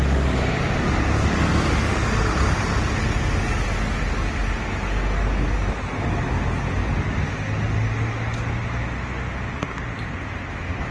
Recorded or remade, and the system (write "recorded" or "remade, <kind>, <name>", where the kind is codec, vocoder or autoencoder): recorded